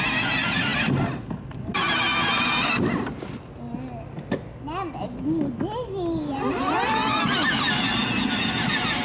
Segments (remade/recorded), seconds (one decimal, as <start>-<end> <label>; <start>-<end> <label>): 0.0-9.0 recorded